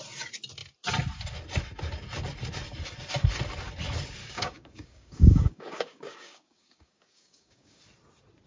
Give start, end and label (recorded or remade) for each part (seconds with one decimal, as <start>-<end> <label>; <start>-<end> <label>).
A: 0.0-4.2 recorded; 4.2-7.8 remade; 7.8-8.5 recorded